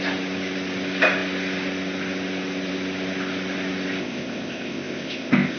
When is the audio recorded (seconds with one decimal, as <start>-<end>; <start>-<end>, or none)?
0.0-4.0